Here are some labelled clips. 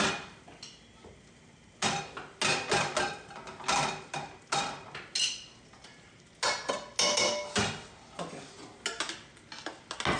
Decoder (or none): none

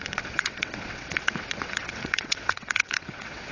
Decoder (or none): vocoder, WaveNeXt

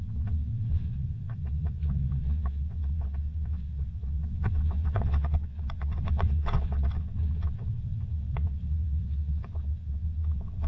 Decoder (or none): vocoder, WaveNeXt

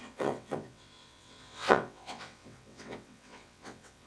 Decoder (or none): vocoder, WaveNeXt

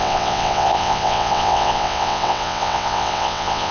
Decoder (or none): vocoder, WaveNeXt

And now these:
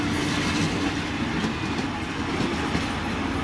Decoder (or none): none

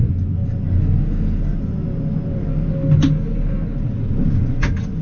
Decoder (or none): none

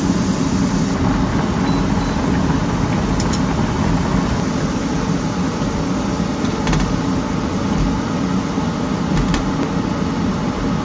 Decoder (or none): none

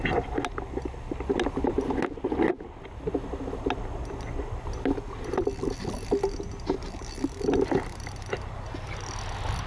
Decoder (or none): none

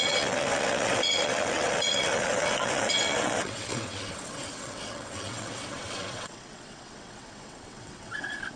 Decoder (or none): vocoder, WaveNeXt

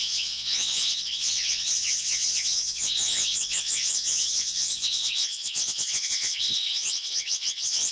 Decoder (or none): vocoder, WaveNeXt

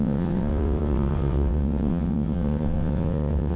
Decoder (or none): vocoder, WaveNeXt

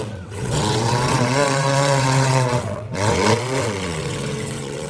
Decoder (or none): vocoder, WaveNeXt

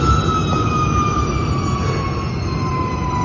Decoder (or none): none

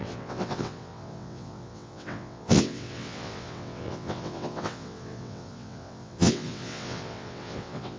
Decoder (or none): vocoder, WaveNeXt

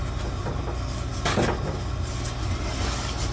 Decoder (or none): none